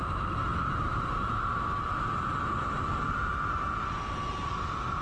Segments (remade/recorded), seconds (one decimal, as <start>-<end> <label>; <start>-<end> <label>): 0.0-5.0 recorded